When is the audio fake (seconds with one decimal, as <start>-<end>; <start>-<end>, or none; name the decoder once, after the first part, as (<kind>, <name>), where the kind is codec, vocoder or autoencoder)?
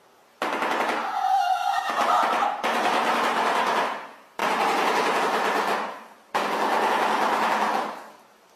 4.4-5.2 (vocoder, BigVGAN v2)